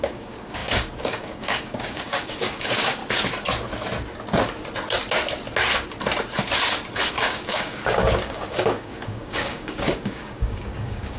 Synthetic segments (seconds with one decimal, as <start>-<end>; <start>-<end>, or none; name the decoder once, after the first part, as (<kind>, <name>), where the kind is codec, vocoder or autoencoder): 0.0-3.0 (codec, DAC); 7.1-11.2